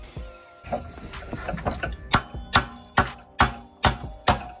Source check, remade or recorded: recorded